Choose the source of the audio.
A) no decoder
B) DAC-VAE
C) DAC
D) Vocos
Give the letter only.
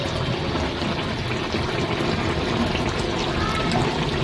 A